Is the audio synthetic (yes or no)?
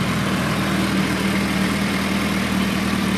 yes